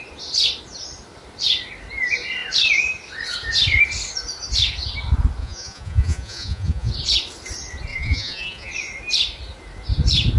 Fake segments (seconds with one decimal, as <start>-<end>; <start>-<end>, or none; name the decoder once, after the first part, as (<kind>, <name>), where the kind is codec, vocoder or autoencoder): 5.4-6.9 (vocoder, Vocos); 7.9-8.7